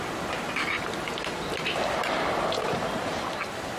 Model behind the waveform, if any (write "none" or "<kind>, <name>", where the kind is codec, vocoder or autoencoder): none